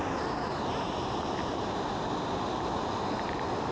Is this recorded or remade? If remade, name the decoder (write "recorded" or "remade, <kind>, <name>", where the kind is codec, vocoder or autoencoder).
recorded